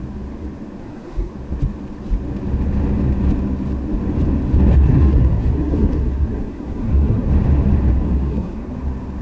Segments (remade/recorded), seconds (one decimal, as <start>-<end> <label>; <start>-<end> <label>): 0.0-0.8 recorded; 0.8-1.3 remade; 1.3-4.7 recorded; 4.7-7.3 remade; 7.3-7.9 recorded; 7.9-8.7 remade; 8.7-9.2 recorded